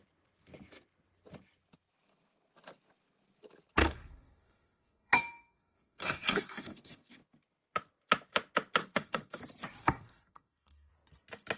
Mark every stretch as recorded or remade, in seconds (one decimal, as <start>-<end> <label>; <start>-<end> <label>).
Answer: 0.0-3.8 recorded; 3.8-7.1 remade; 7.1-8.8 recorded; 8.8-9.4 remade; 9.4-9.8 recorded; 9.8-10.9 remade; 10.9-11.6 recorded